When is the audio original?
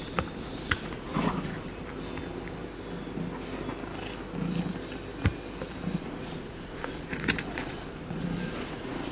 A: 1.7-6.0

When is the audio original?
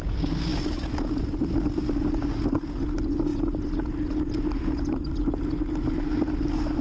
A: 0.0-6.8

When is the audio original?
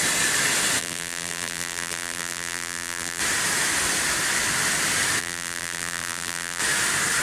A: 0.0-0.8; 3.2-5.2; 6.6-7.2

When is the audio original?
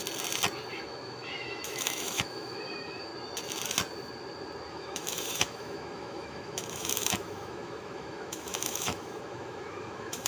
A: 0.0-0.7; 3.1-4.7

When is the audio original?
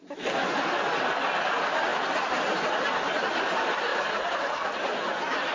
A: 0.0-5.5